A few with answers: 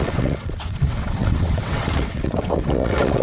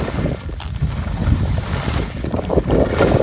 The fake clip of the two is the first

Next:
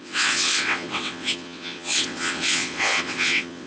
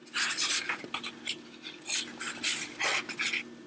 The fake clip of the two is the first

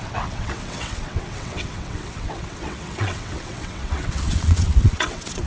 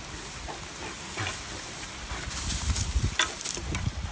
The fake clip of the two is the first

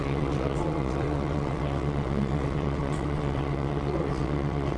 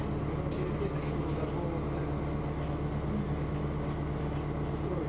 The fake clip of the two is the first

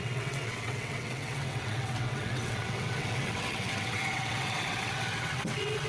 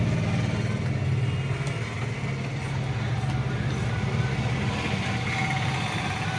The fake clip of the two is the first